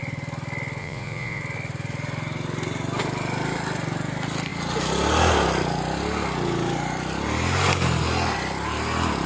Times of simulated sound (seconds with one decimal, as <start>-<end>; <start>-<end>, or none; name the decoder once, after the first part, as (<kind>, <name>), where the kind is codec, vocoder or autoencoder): 0.8-1.4 (vocoder, Vocos)